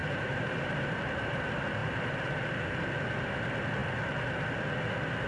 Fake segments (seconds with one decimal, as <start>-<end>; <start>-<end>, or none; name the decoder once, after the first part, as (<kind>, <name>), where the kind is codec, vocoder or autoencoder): 0.0-0.8 (vocoder, BigVGAN v2); 1.8-2.8